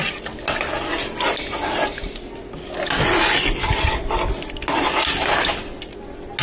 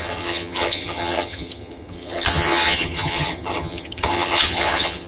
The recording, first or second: first